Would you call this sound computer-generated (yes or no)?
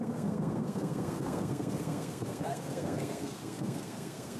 yes